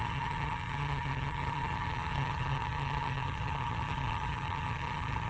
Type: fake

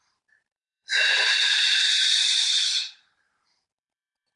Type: fake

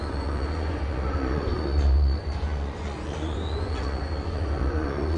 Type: fake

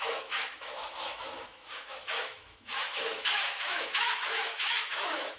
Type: fake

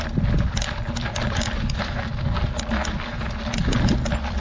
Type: real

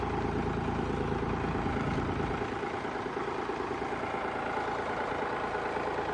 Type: real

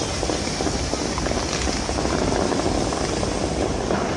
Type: real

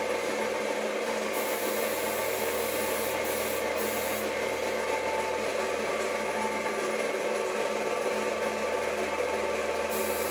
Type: real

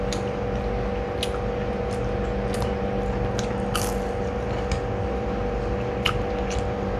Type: real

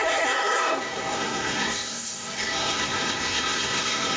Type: fake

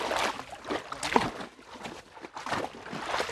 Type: real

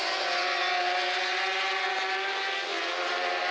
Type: real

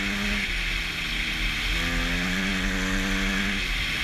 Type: real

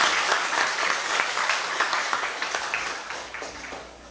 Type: fake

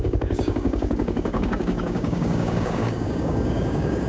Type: fake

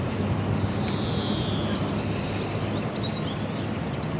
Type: real